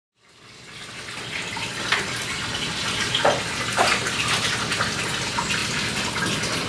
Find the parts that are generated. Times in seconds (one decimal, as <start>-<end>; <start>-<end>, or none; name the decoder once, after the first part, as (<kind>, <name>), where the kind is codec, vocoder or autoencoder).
none